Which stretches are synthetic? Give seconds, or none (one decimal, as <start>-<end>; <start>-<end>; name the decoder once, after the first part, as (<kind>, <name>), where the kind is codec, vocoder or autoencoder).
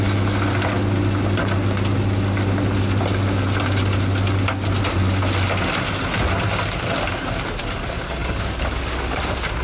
7.6-9.2 (codec, DAC)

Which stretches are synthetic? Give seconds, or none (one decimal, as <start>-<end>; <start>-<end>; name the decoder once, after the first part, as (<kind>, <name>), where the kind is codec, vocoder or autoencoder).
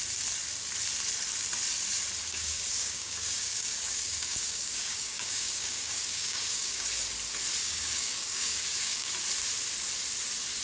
2.2-6.9 (codec, DAC); 7.6-9.1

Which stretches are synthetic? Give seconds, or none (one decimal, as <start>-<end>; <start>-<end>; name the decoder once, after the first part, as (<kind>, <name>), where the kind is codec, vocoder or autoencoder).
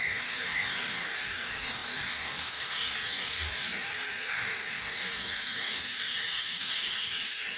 0.0-7.6 (codec, DAC)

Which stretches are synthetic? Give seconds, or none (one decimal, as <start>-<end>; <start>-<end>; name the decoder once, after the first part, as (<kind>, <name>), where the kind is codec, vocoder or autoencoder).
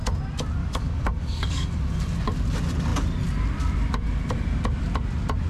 0.6-1.8 (codec, DAC)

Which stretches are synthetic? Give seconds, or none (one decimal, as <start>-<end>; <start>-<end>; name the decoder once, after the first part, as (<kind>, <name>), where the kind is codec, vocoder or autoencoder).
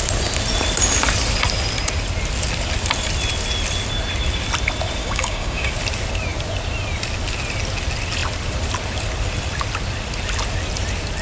5.0-5.7 (codec, DAC)